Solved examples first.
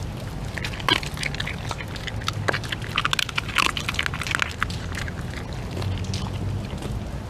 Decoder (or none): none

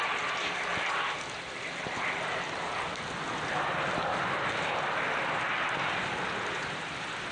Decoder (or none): none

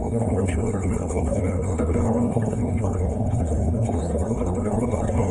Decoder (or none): codec, SNAC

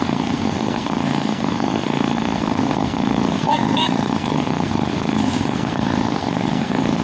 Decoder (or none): codec, SNAC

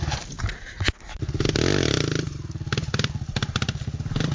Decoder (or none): none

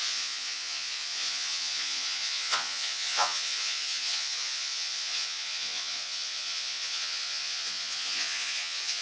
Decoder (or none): vocoder, Vocos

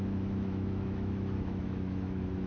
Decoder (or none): autoencoder, DAC-VAE